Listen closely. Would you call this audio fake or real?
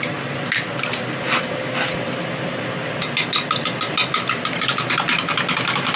real